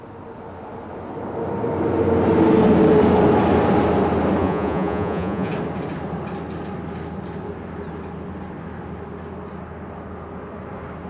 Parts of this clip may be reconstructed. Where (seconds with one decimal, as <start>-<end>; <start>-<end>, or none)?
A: 4.4-5.5